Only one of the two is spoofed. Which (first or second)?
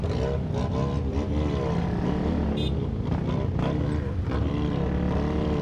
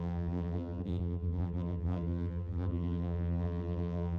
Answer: second